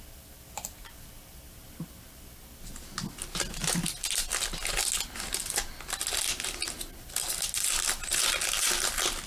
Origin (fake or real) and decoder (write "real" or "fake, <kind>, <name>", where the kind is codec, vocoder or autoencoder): real